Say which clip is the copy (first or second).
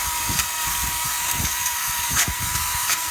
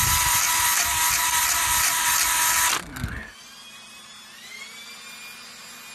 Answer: first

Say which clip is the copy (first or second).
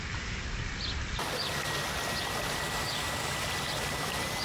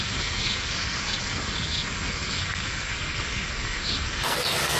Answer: second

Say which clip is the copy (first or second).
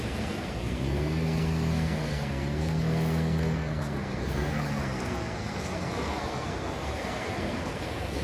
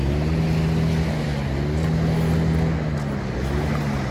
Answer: first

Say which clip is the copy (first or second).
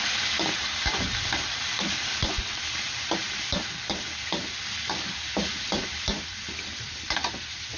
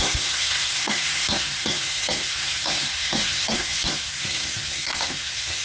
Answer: second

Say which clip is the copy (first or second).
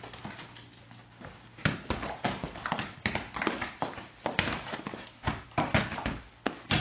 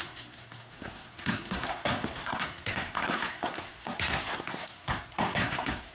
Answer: second